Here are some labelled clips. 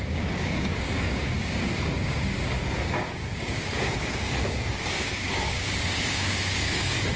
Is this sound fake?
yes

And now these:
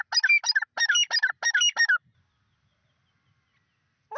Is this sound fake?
no